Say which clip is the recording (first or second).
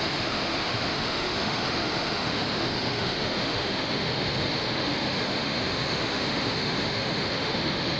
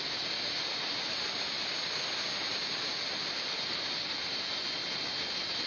second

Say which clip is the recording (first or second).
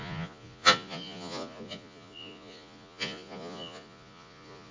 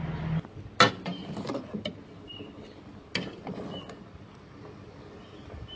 second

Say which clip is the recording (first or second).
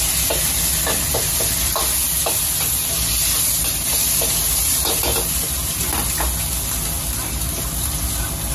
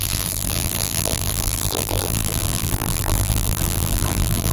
first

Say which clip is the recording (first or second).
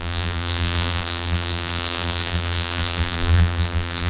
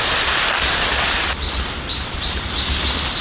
second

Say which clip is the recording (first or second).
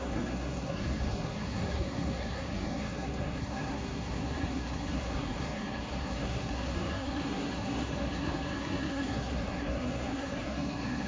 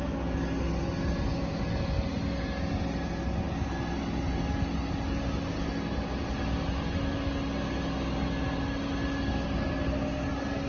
second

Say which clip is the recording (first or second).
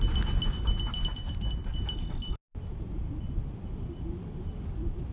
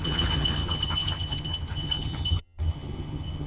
first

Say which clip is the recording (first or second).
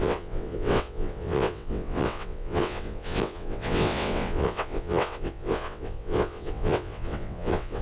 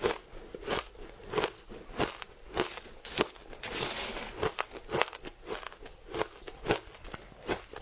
second